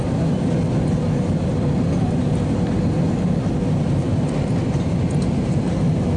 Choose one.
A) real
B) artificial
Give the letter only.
A